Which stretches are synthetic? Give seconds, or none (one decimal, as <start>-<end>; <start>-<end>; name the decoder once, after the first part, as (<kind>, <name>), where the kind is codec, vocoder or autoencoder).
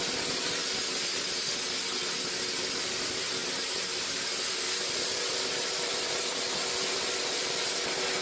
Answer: none